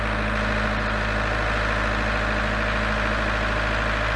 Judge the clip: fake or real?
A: real